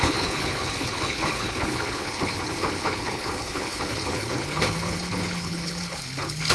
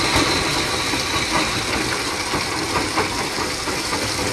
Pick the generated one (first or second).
first